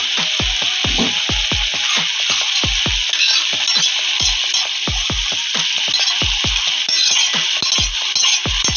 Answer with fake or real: real